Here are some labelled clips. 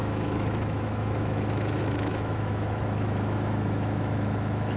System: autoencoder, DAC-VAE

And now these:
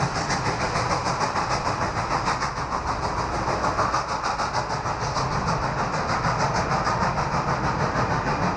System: none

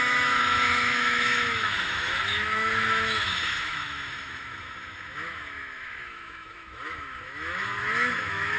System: autoencoder, DAC-VAE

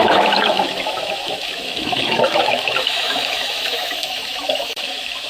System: autoencoder, DAC-VAE